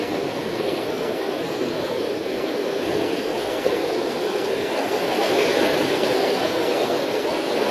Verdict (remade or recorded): remade